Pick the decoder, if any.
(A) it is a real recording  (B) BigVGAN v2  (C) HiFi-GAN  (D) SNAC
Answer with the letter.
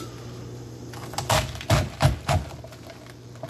A